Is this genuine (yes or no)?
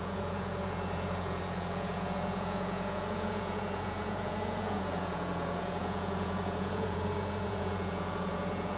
no